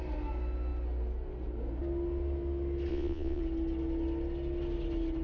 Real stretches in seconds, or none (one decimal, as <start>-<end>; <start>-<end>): 0.0-2.9; 3.4-5.2